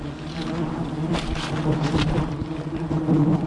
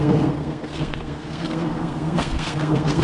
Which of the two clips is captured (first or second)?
first